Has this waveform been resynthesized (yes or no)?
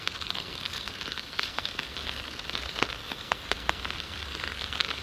yes